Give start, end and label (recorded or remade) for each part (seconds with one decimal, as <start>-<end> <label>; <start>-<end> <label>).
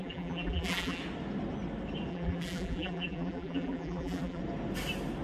0.0-1.0 remade; 1.0-2.1 recorded; 2.1-4.4 remade; 4.4-5.2 recorded